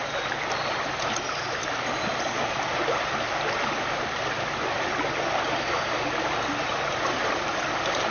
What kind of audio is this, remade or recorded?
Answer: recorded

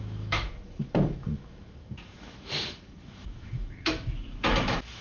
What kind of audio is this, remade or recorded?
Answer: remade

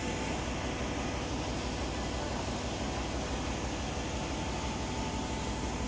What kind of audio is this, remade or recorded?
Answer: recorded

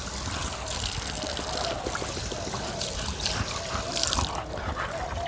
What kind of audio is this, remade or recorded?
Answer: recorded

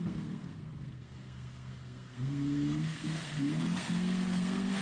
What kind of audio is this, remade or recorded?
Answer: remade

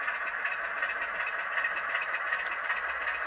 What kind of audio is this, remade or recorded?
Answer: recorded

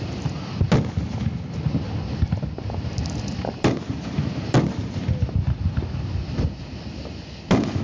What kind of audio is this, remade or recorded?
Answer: recorded